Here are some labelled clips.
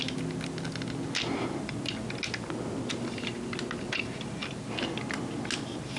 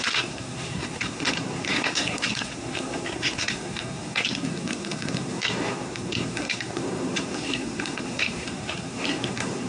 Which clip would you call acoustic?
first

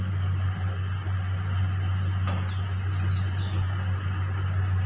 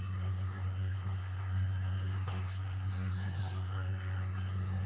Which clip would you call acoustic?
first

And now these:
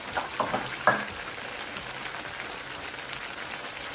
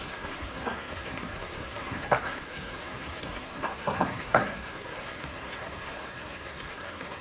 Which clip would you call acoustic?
first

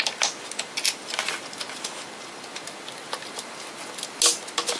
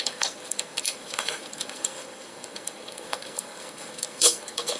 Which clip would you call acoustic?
first